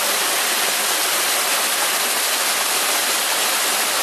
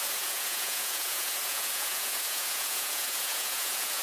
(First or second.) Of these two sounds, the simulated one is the second